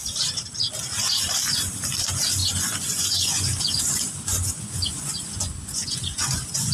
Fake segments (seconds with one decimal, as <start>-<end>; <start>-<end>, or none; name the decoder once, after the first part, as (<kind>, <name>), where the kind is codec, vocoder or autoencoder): 2.4-6.7 (vocoder, Vocos)